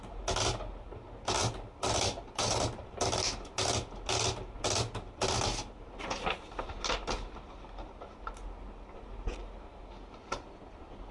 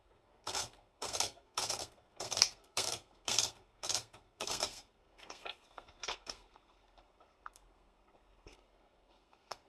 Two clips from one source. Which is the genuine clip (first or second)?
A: first